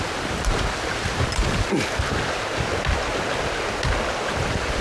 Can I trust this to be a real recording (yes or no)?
yes